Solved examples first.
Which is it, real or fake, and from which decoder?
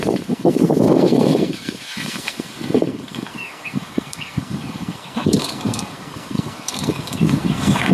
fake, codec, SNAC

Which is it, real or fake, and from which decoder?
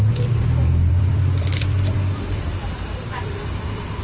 fake, vocoder, BigVGAN v2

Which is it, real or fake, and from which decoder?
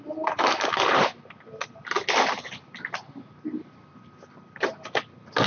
real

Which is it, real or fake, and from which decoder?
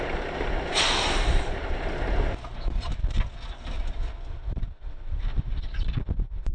real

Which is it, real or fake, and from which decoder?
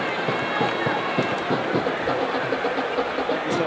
real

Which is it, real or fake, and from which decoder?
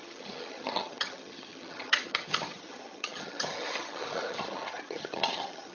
fake, vocoder, HiFi-GAN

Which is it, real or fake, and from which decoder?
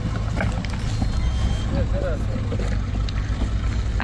real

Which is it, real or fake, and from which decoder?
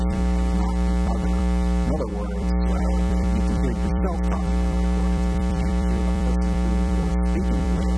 fake, vocoder, BigVGAN v2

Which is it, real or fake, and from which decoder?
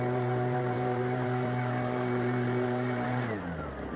fake, vocoder, BigVGAN v2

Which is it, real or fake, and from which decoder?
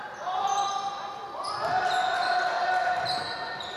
real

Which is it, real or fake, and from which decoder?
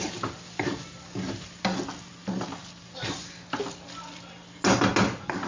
real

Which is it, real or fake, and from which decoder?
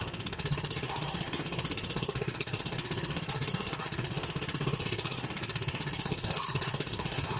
fake, codec, SNAC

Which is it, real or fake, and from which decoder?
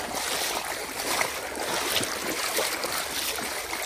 real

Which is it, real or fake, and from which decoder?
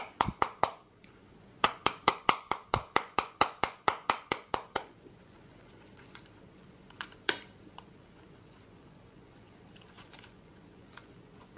fake, vocoder, Vocos